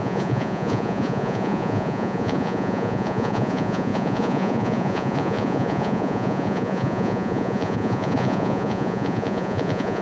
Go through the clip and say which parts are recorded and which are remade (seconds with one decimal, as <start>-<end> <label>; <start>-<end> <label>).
0.0-10.0 remade